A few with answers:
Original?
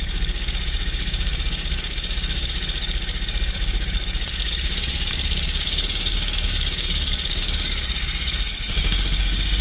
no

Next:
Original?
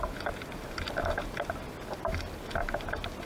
yes